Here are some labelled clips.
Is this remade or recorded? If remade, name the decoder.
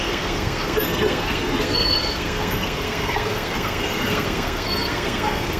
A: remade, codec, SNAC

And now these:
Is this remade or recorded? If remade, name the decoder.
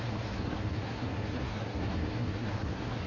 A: remade, codec, SNAC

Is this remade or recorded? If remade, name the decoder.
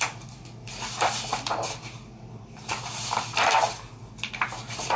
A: recorded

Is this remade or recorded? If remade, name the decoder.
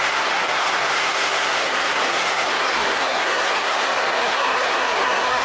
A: remade, codec, SNAC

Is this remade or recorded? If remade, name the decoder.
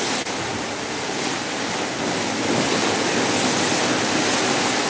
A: recorded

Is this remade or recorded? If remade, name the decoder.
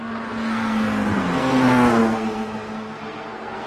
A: remade, codec, SNAC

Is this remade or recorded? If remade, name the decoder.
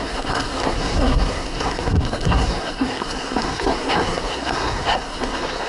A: remade, codec, SNAC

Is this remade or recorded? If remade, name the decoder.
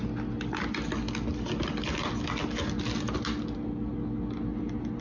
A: recorded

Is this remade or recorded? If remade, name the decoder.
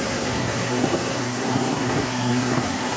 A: remade, codec, SNAC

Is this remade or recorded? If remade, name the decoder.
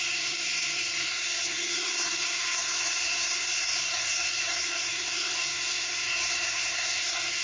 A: remade, codec, SNAC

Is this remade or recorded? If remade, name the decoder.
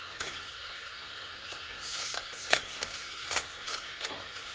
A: remade, codec, SNAC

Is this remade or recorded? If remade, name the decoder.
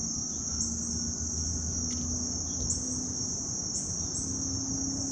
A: recorded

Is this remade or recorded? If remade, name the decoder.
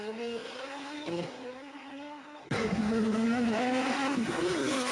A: remade, codec, SNAC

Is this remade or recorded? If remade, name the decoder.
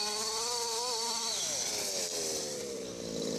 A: recorded